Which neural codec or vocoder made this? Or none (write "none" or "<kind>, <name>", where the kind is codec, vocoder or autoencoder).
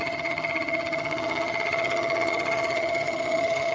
vocoder, HiFi-GAN